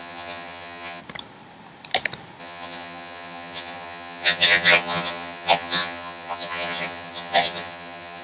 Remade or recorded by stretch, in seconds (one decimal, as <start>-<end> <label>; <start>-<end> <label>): 0.0-1.0 remade; 1.0-2.4 recorded; 2.4-8.2 remade